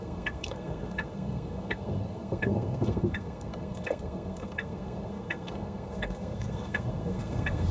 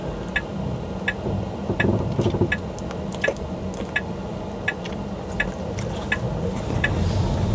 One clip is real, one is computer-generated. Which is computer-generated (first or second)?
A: first